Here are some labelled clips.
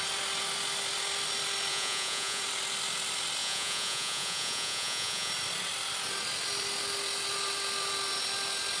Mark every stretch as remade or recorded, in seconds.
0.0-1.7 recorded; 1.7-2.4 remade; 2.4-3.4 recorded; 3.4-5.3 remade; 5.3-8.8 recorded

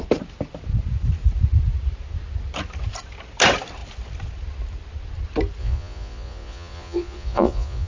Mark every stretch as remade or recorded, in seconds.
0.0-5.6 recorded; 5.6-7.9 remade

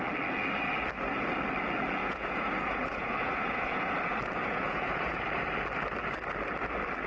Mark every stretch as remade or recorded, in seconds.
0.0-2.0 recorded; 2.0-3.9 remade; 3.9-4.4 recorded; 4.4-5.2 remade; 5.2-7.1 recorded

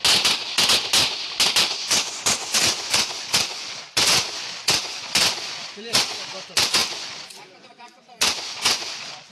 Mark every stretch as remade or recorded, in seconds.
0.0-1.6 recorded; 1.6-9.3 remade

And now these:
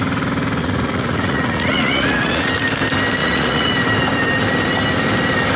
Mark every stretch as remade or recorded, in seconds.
0.0-0.6 recorded; 0.6-2.5 remade; 2.5-3.2 recorded; 3.2-3.7 remade; 3.7-5.6 recorded